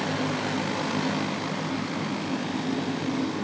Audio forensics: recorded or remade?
recorded